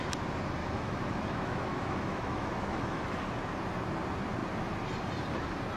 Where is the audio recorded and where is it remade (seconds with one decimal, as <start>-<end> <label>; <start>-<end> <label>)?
0.0-0.6 recorded; 0.6-3.2 remade; 3.2-5.8 recorded